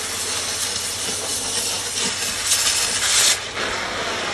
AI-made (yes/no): no